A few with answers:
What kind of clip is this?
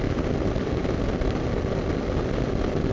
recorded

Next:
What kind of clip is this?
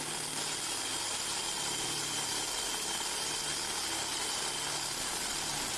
recorded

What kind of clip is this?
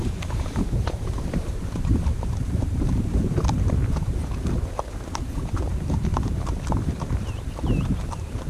remade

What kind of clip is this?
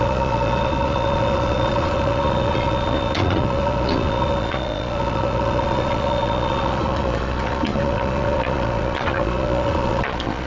remade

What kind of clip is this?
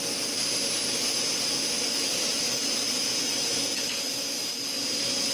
recorded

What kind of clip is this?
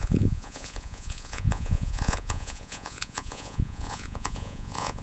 remade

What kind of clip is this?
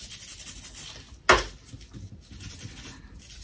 recorded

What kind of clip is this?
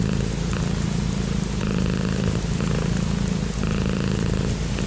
recorded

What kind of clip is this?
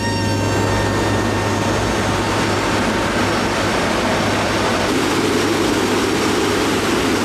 recorded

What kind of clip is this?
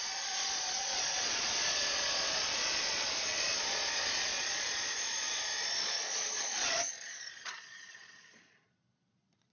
remade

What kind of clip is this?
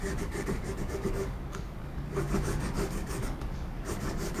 remade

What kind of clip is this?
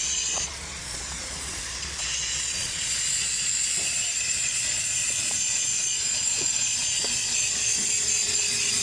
remade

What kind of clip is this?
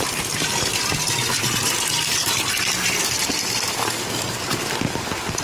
recorded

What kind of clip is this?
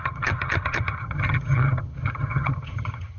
remade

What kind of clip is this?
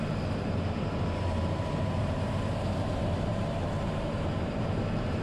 remade